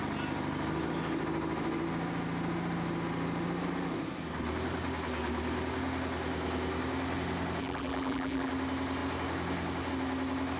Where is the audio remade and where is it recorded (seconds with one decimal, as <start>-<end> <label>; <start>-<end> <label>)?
0.0-7.6 recorded; 7.6-8.5 remade; 8.5-10.6 recorded